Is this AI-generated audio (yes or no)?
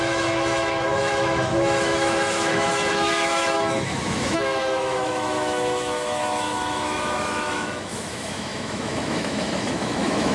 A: yes